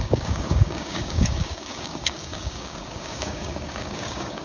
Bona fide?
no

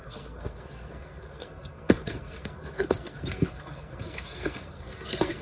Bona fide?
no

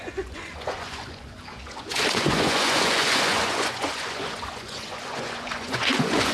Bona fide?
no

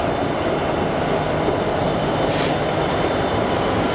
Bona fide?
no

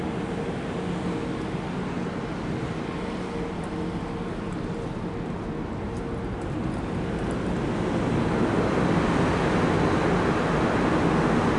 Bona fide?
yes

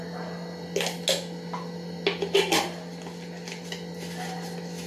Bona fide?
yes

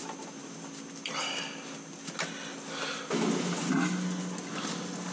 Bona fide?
yes